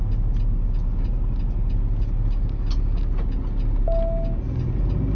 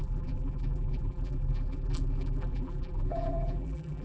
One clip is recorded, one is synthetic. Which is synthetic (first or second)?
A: second